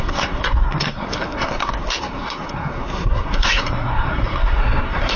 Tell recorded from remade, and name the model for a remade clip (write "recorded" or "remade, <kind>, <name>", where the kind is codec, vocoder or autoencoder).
remade, codec, SNAC